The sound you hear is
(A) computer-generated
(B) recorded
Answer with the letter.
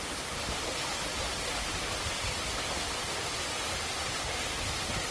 B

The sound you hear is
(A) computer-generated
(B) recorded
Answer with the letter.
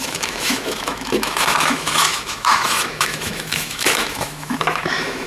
A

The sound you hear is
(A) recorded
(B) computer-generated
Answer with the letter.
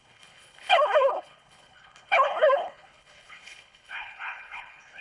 B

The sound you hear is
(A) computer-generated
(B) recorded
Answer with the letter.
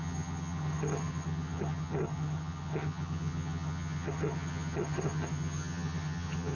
A